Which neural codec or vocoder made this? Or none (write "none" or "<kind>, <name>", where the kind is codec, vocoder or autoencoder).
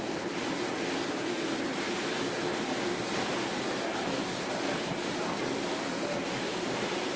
none